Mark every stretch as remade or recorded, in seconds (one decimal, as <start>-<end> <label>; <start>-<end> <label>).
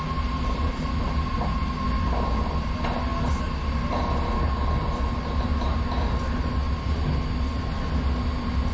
0.0-8.7 recorded